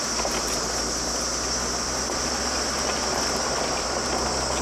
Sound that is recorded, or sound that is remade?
recorded